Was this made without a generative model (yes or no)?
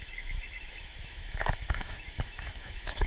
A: no